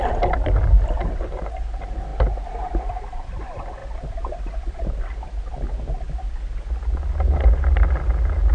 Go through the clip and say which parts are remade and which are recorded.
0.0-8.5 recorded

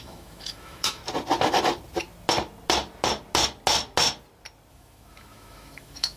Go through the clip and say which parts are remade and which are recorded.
0.0-1.0 remade; 1.0-4.7 recorded; 4.7-6.2 remade

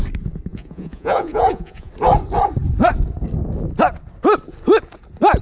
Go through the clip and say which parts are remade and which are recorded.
0.0-0.5 recorded; 0.5-1.9 remade; 1.9-5.4 recorded

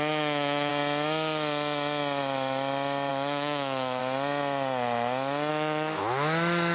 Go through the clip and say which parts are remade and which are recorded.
0.0-0.7 remade; 0.7-3.1 recorded; 3.1-4.0 remade; 4.0-5.5 recorded; 5.5-6.7 remade

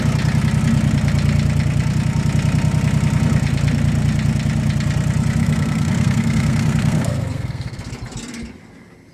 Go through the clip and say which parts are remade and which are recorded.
0.0-5.4 recorded; 5.4-7.9 remade; 7.9-9.1 recorded

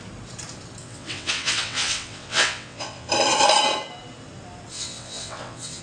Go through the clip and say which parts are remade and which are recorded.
0.0-0.8 recorded; 0.8-3.1 remade; 3.1-4.7 recorded; 4.7-5.8 remade

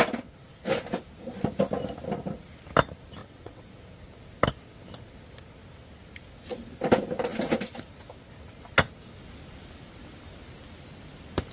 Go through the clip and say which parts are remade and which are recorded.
0.0-3.2 recorded; 3.2-3.7 remade; 3.7-11.5 recorded

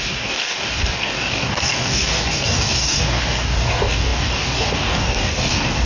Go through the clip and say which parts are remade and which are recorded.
0.0-5.9 remade